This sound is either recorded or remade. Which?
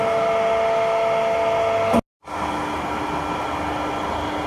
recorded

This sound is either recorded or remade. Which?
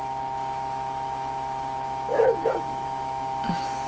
remade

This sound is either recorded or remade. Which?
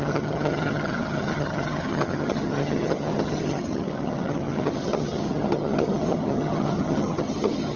remade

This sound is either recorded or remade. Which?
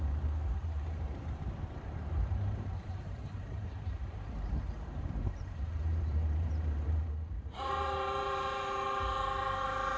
remade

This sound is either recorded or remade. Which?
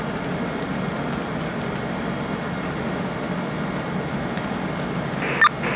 recorded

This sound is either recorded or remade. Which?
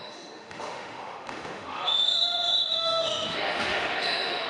remade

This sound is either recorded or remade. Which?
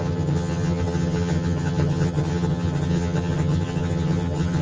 remade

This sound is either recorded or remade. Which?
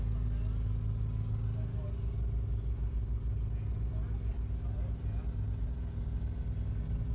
recorded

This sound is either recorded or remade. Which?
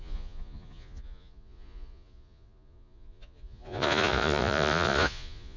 remade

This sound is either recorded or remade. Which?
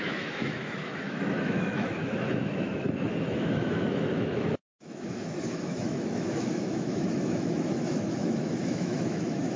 remade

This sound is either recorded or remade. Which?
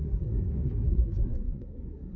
remade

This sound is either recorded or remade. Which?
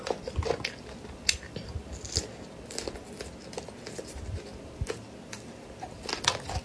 recorded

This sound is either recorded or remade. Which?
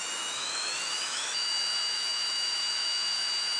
remade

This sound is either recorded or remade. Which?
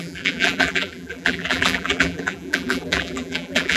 remade